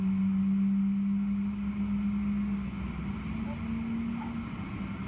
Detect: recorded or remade recorded